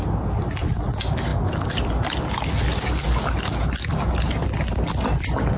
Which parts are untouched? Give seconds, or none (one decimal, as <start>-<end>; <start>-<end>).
0.0-5.6